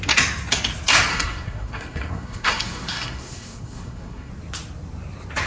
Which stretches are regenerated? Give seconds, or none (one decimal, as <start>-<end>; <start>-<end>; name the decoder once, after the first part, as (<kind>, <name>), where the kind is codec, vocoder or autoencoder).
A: 1.1-4.3 (codec, SNAC)